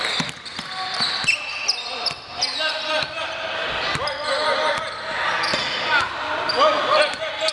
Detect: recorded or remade recorded